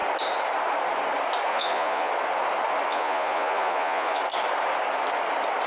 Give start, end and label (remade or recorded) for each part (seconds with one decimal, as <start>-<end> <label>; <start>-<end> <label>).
0.0-1.5 recorded; 1.5-2.1 remade; 2.1-2.9 recorded; 2.9-4.2 remade; 4.2-5.7 recorded

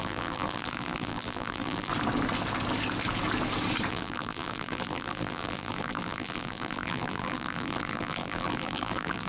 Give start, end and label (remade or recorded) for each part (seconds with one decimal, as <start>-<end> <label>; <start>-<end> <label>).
0.0-1.9 remade; 1.9-3.9 recorded; 3.9-9.3 remade

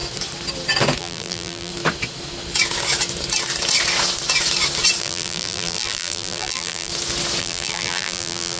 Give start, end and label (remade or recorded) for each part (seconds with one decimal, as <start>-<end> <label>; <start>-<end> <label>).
0.0-1.0 recorded; 1.0-1.7 remade; 1.7-5.0 recorded; 5.0-6.9 remade; 6.9-7.4 recorded; 7.4-8.6 remade

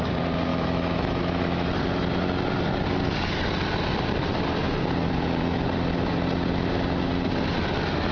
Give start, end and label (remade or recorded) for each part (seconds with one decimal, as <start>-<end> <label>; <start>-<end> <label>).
0.0-0.5 recorded; 0.5-1.7 remade; 1.7-8.1 recorded

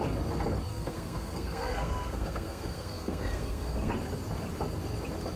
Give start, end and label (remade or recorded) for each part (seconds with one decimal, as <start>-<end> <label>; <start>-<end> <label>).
0.0-0.7 recorded; 0.7-3.9 remade; 3.9-5.4 recorded

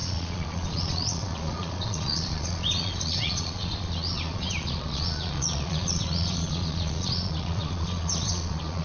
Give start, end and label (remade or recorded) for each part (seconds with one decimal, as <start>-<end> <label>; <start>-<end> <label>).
0.0-8.8 remade

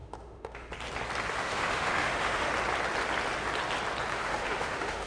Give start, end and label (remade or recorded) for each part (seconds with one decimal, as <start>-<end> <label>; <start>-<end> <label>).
0.0-0.7 remade; 0.7-1.4 recorded; 1.4-2.5 remade; 2.5-4.1 recorded; 4.1-5.1 remade